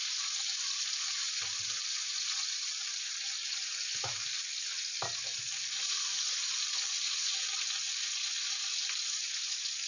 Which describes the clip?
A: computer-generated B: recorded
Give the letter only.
B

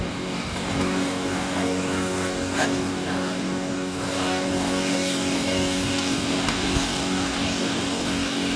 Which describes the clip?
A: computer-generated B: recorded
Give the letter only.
A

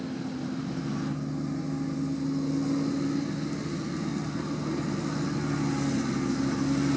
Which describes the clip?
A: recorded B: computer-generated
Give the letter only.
A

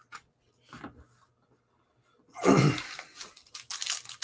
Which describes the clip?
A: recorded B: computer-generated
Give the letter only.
A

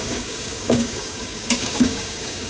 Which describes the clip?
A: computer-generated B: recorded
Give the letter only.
A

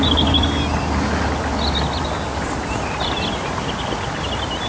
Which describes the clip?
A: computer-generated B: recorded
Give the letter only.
B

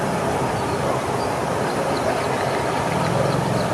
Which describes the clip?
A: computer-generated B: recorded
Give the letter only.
B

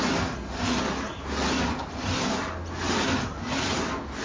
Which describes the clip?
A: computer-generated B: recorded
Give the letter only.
B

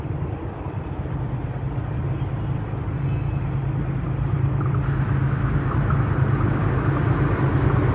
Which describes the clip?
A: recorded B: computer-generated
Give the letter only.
A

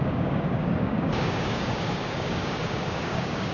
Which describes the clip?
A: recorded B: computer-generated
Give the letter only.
B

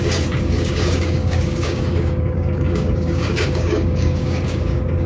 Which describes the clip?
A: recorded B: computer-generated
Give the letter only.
B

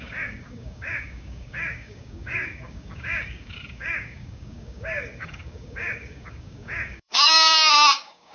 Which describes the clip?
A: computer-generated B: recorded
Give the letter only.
A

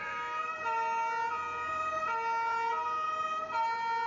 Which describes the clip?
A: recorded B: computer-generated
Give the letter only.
A